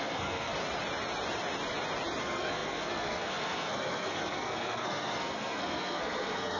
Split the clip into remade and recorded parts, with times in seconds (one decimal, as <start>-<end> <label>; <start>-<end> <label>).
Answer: 0.0-0.5 remade; 0.5-2.2 recorded; 2.2-6.6 remade